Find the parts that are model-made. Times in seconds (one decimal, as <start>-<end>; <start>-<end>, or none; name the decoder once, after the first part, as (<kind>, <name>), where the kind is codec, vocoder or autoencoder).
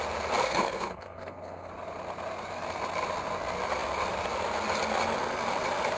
0.4-1.7 (codec, SNAC)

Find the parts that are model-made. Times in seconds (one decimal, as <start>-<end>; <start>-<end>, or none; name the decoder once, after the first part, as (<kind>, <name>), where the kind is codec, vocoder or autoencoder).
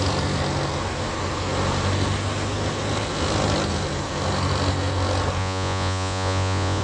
5.4-6.8 (vocoder, Vocos)